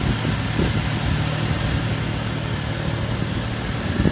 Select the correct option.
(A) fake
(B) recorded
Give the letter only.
B